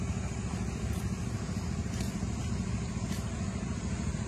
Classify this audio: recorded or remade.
remade